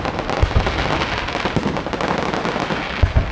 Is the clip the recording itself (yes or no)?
yes